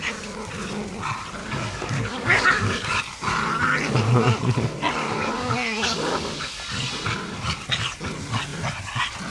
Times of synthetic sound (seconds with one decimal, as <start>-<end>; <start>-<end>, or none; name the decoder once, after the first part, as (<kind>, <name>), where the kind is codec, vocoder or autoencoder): 1.4-3.0 (codec, DAC); 5.0-6.6